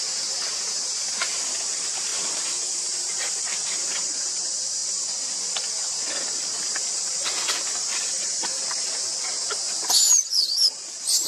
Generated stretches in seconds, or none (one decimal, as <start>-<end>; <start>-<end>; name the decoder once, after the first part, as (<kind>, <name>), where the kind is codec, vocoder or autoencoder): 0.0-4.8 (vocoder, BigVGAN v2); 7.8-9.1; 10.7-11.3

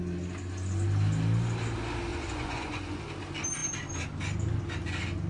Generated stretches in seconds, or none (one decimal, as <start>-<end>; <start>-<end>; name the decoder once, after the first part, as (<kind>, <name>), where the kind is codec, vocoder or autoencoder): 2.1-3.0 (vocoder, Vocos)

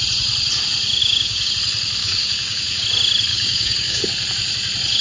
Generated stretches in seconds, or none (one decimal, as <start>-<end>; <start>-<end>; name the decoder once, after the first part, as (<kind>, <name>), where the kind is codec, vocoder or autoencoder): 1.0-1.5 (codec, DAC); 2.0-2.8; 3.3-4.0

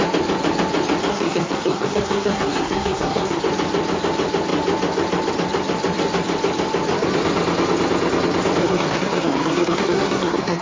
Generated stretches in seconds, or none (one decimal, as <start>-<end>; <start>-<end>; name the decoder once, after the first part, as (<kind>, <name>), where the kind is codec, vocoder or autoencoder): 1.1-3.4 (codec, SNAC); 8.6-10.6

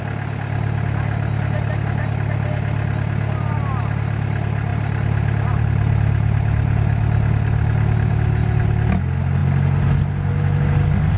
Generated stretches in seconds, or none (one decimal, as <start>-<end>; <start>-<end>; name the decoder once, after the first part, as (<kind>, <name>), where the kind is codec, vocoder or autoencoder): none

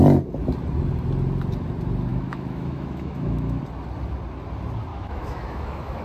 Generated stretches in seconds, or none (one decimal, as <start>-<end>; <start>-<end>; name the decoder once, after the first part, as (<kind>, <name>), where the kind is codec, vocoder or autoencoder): 2.1-3.6 (autoencoder, DAC-VAE); 4.9-6.0